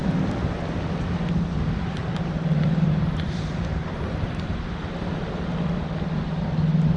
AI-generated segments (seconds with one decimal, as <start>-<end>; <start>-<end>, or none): 2.0-4.6

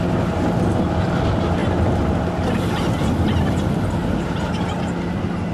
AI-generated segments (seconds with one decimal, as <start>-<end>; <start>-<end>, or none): none

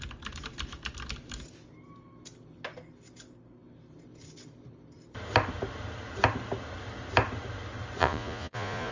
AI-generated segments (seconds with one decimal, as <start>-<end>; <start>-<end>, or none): 8.0-8.9

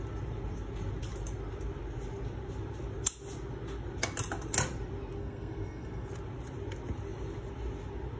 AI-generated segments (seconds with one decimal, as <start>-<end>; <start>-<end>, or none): 5.2-6.1